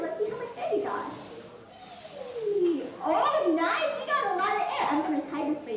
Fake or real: real